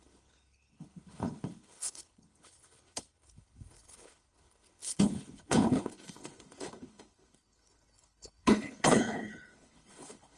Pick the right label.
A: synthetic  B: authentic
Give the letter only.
A